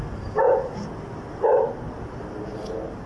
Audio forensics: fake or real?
real